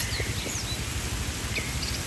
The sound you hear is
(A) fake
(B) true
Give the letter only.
B